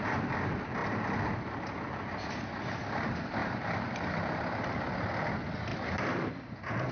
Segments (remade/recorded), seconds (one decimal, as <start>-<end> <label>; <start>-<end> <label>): 0.0-3.4 recorded; 3.4-4.1 remade; 4.1-5.7 recorded; 5.7-6.3 remade; 6.3-6.9 recorded